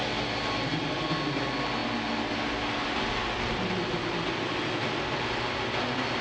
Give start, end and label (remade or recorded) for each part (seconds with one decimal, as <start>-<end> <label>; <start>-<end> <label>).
0.0-6.2 recorded